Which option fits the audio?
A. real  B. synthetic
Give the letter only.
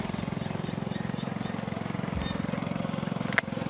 A